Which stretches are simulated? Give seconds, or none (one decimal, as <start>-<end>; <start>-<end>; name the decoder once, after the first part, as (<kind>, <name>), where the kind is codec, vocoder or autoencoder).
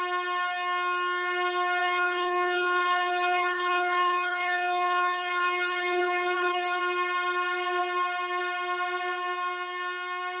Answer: 1.8-6.8 (codec, HILCodec)